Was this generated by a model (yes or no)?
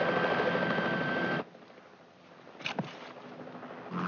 no